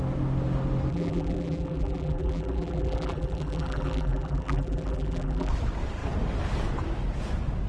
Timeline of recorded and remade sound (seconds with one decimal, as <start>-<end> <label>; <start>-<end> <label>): 0.0-0.9 recorded; 0.9-5.5 remade; 5.5-7.7 recorded